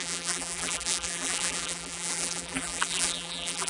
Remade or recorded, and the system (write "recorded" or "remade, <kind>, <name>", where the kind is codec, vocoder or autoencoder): remade, vocoder, BigVGAN v2